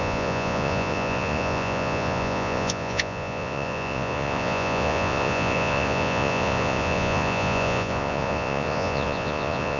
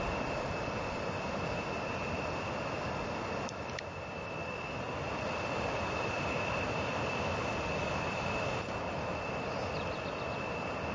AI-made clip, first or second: first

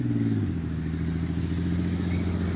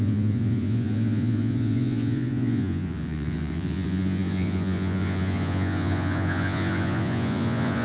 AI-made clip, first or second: second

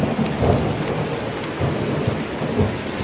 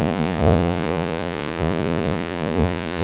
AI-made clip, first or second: second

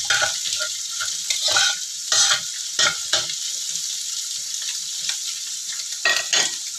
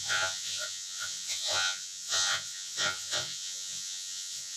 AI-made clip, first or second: second